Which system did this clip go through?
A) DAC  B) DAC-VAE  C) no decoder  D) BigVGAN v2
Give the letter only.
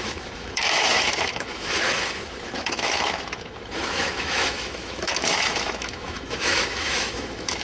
B